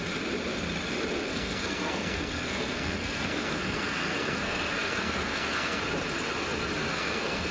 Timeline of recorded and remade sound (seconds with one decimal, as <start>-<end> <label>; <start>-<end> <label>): 0.0-1.3 recorded; 1.3-5.8 remade; 5.8-6.8 recorded; 6.8-7.5 remade